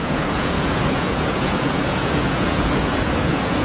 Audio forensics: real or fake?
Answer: fake